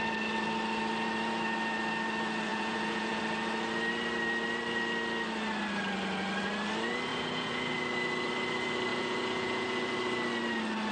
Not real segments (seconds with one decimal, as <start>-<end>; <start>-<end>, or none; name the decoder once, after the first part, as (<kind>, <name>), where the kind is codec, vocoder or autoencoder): 2.5-3.2 (vocoder, Vocos); 7.1-7.7; 8.9-9.9